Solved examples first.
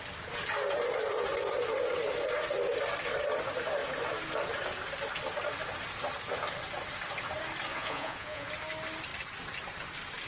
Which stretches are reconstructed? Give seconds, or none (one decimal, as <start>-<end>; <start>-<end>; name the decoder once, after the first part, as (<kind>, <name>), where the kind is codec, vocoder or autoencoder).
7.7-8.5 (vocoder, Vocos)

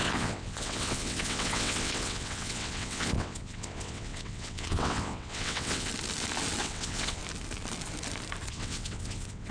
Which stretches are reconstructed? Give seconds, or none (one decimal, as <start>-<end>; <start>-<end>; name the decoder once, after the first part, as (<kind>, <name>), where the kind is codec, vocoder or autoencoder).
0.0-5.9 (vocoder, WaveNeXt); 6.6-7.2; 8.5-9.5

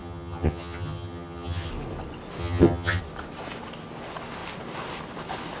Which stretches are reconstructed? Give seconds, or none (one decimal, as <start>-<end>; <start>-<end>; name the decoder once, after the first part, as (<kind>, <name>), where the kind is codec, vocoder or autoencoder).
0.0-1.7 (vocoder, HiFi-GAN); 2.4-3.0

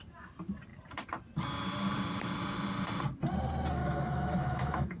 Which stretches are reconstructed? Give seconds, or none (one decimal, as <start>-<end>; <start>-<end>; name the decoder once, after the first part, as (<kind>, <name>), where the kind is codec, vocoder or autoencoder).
3.8-5.0 (autoencoder, DAC-VAE)